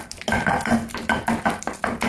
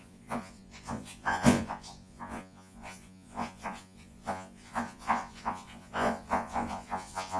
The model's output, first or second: second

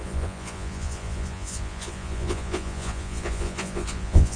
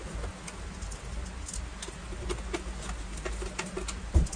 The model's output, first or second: first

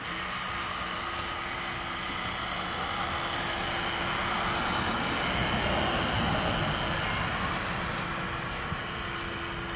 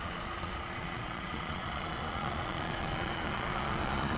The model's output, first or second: second